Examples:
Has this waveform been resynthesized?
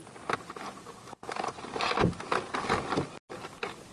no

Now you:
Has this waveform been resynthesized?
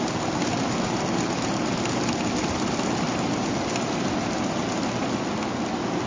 no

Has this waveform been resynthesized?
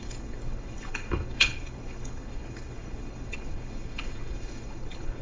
yes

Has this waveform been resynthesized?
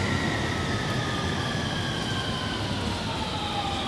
no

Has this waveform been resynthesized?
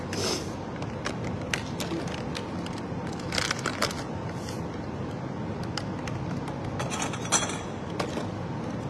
no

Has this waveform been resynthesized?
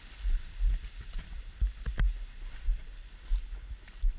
no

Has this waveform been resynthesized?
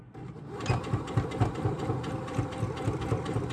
no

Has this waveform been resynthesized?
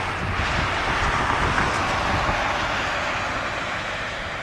no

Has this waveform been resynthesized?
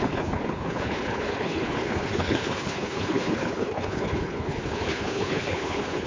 yes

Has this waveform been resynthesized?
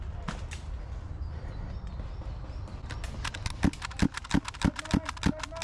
no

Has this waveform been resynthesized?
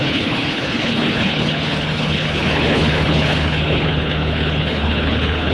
yes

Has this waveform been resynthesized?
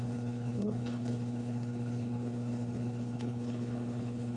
yes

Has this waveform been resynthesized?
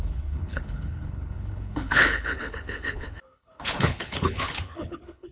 yes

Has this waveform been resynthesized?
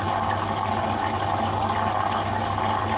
no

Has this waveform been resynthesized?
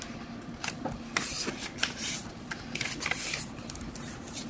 no